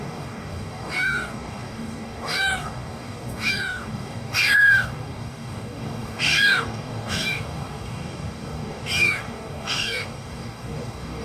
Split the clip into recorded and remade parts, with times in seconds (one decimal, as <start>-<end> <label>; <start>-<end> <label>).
0.0-11.2 remade

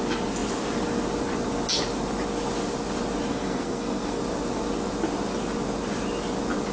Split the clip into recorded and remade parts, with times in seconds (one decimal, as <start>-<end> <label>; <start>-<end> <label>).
0.0-3.3 recorded; 3.3-4.2 remade; 4.2-6.7 recorded